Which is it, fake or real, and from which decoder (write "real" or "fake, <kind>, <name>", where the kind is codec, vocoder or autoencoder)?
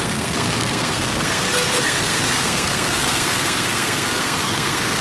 fake, codec, SNAC